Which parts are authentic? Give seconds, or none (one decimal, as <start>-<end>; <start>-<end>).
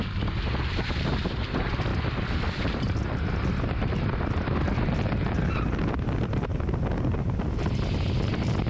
0.0-8.7